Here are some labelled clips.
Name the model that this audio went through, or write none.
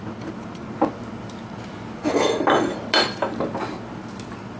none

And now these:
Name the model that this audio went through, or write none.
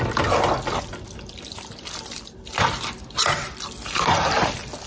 none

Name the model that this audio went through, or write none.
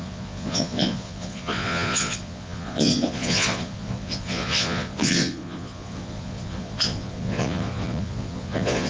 vocoder, Vocos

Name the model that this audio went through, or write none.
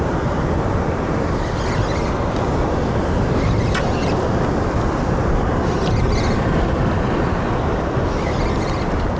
none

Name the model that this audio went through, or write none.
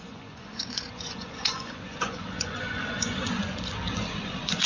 vocoder, Vocos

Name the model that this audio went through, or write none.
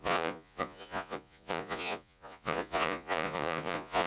vocoder, Vocos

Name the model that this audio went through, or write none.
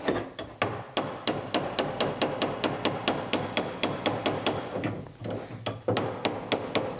none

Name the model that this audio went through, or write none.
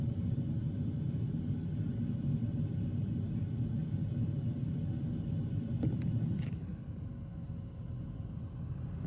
none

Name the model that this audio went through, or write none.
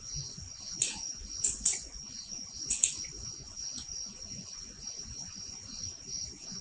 vocoder, Vocos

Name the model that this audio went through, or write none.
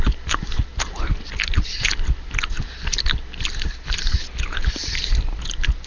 none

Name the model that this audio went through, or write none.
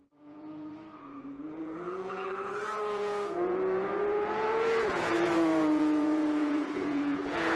vocoder, Vocos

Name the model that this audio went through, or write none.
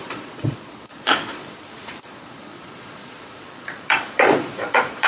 vocoder, Vocos